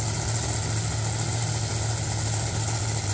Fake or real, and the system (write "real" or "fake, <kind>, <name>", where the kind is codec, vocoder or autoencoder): real